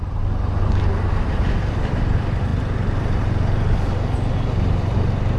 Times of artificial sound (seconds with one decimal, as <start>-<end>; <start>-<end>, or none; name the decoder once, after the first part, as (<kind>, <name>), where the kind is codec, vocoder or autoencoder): none